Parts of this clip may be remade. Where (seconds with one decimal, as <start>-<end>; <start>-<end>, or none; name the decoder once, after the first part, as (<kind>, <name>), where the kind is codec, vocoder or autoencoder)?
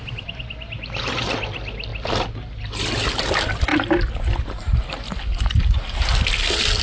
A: none